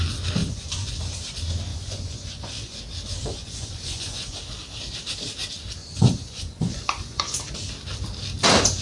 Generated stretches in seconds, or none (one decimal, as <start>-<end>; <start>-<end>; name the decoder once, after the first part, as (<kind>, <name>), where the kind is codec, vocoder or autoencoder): 0.4-1.0 (vocoder, Vocos); 1.7-2.8; 3.2-4.4; 5.8-7.4